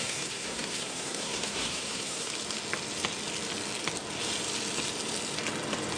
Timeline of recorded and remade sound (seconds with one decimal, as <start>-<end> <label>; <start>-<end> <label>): 0.0-2.3 remade; 2.3-6.0 recorded

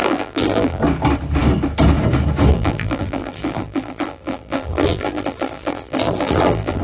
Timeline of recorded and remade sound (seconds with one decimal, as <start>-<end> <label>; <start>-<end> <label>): 0.0-0.8 remade; 0.8-2.5 recorded; 2.5-6.8 remade

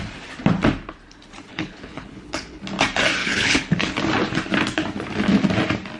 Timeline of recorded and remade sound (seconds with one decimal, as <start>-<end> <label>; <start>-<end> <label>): 0.0-1.5 recorded; 1.5-2.6 remade; 2.6-3.2 recorded; 3.2-4.0 remade; 4.0-6.0 recorded

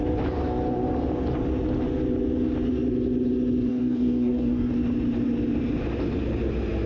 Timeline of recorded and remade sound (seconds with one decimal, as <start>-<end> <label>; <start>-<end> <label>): 0.0-3.7 recorded; 3.7-4.7 remade; 4.7-6.9 recorded